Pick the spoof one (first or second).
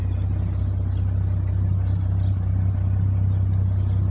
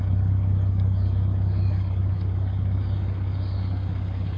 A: second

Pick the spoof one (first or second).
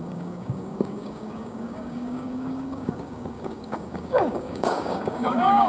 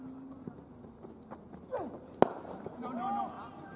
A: first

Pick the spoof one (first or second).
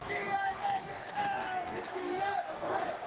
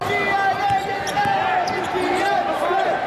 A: first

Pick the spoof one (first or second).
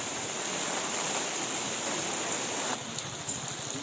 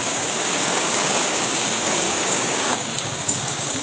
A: second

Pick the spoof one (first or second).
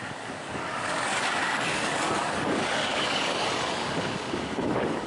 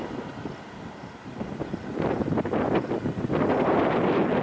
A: first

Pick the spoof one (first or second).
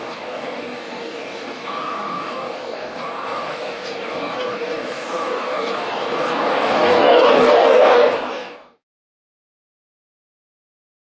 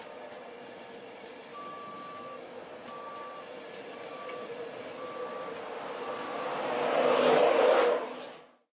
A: first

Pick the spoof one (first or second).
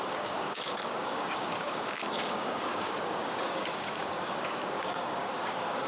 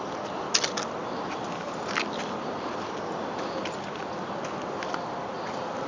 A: first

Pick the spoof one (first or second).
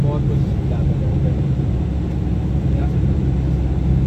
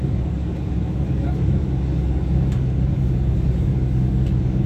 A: second